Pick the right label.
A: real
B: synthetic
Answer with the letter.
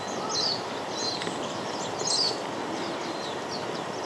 A